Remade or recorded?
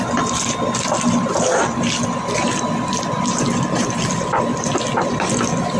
recorded